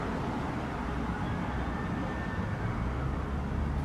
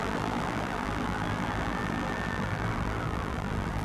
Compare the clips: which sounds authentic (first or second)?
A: first